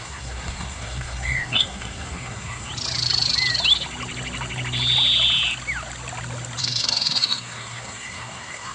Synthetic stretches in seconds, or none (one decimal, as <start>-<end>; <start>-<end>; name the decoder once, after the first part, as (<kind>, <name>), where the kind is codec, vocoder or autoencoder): 0.0-2.7 (codec, SNAC); 6.6-8.7